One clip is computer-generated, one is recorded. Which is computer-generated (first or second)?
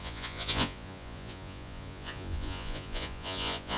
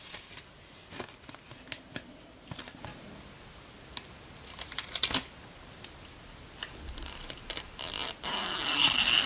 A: first